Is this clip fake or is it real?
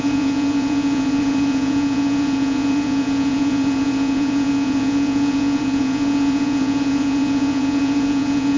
fake